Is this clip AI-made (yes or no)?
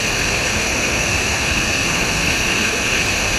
yes